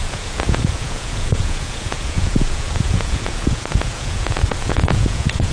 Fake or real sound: fake